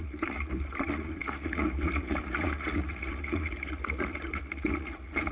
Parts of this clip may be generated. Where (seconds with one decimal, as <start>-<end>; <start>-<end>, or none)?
0.0-5.3